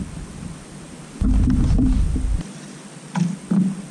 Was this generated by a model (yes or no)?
yes